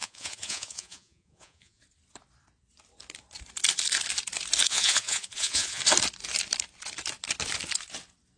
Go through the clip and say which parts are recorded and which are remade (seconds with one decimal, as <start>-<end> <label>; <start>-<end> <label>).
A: 0.0-1.8 remade; 1.8-4.7 recorded; 4.7-5.8 remade; 5.8-8.4 recorded